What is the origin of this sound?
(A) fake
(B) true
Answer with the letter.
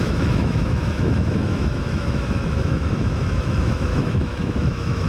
A